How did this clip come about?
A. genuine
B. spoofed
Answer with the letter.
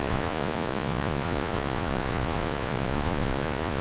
B